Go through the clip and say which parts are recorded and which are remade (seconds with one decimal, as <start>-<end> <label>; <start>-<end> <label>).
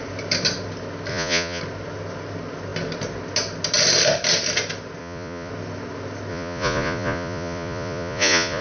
0.0-1.1 recorded; 1.1-1.6 remade; 1.6-5.0 recorded; 5.0-5.5 remade; 5.5-6.3 recorded; 6.3-8.6 remade